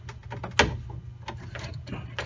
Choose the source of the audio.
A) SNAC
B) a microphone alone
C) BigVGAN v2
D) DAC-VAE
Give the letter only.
B